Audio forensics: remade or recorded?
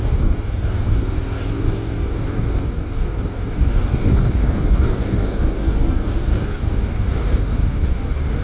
remade